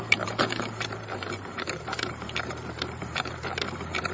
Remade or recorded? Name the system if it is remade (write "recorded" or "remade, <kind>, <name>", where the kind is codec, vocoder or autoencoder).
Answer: remade, vocoder, BigVGAN v2